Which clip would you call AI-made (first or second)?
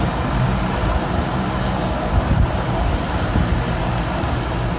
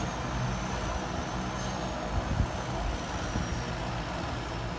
first